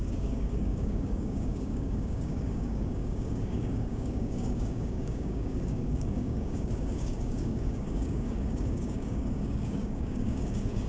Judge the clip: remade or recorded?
remade